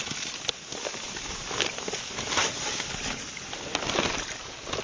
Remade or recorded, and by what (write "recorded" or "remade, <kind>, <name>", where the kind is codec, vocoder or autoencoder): recorded